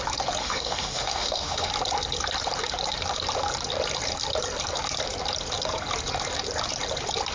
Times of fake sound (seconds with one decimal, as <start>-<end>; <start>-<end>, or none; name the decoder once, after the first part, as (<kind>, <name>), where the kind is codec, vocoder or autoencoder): 0.4-1.7 (autoencoder, DAC-VAE)